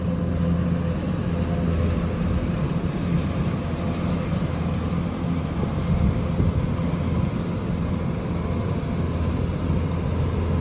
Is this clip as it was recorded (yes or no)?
yes